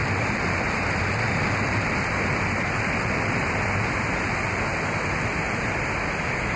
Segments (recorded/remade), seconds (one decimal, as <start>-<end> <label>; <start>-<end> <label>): 0.0-6.6 recorded